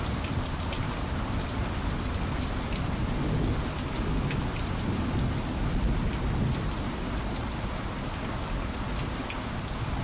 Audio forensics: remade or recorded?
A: recorded